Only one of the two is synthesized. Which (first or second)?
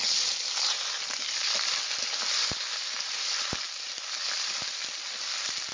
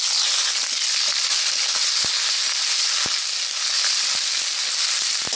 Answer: first